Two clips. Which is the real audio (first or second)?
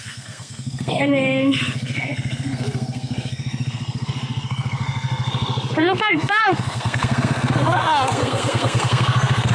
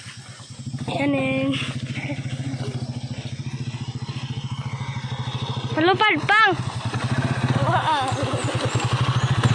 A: second